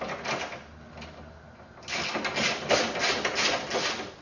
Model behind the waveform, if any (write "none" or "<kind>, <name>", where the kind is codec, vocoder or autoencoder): none